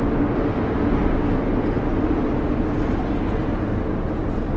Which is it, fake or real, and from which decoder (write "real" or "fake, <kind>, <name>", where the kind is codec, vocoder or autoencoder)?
real